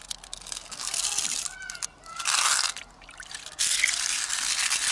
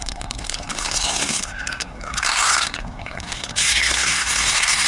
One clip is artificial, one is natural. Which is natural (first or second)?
first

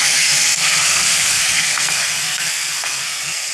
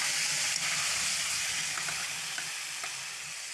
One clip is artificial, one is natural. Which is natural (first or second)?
second